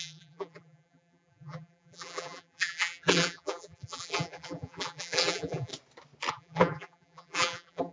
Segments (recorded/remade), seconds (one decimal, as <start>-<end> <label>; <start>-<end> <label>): 0.0-5.7 remade; 5.7-6.3 recorded; 6.3-7.9 remade